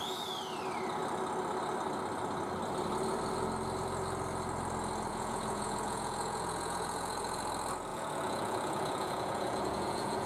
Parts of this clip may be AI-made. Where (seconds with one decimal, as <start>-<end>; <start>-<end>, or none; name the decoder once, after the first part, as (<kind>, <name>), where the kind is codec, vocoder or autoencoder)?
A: 5.1-7.4 (vocoder, Vocos); 7.9-10.3